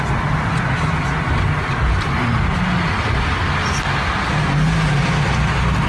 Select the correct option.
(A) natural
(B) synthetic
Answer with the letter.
A